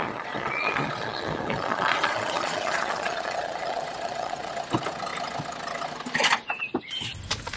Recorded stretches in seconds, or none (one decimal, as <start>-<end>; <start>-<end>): 4.5-7.6